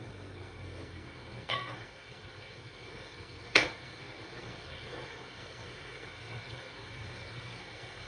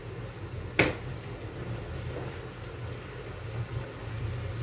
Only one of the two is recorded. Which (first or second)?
second